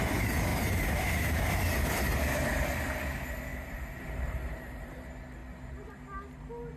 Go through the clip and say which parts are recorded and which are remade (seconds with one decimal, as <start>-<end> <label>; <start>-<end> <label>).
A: 0.0-0.5 recorded; 0.5-1.6 remade; 1.6-3.5 recorded; 3.5-4.9 remade; 4.9-6.8 recorded